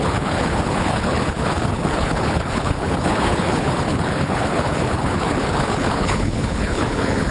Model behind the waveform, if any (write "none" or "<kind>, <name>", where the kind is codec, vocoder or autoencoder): codec, HILCodec